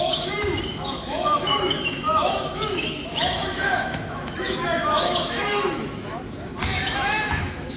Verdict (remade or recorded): remade